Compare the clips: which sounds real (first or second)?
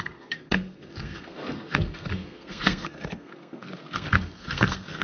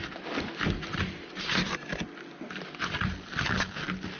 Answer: second